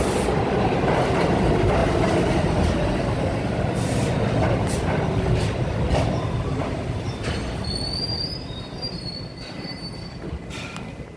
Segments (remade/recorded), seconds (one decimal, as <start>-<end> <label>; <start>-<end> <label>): 0.0-11.2 recorded